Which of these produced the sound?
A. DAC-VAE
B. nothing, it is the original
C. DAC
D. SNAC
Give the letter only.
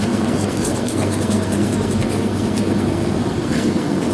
D